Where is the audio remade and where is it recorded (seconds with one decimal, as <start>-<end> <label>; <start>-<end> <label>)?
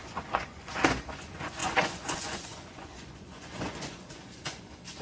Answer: 0.0-5.0 remade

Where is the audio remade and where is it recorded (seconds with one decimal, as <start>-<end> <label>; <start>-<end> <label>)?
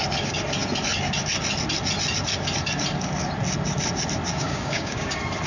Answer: 0.0-4.3 recorded; 4.3-5.1 remade; 5.1-5.5 recorded